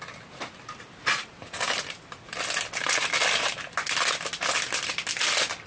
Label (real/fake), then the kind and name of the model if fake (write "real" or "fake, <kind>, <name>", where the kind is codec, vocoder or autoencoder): real